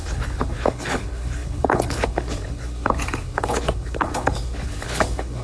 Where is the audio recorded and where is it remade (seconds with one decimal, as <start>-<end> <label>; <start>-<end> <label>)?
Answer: 0.0-5.4 remade